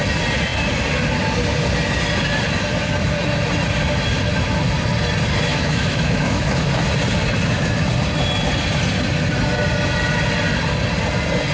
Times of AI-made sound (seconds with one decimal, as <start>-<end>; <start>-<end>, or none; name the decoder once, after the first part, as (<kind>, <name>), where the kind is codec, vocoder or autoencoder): 5.5-6.6 (autoencoder, DAC-VAE)